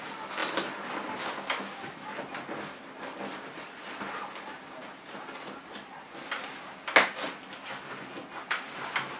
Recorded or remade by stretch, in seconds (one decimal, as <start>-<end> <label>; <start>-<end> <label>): 0.0-9.2 recorded